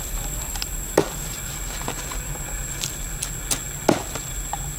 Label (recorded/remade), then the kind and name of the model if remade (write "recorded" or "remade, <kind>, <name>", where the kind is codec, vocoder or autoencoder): recorded